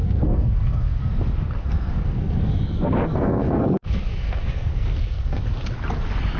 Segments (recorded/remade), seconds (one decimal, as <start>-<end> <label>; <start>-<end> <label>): 0.0-1.0 remade; 1.0-1.6 recorded; 1.6-5.4 remade; 5.4-6.4 recorded